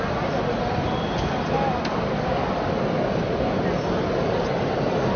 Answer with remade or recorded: recorded